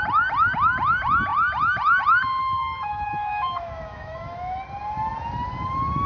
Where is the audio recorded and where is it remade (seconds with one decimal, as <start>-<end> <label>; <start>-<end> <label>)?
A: 0.0-2.4 recorded; 2.4-4.6 remade; 4.6-6.1 recorded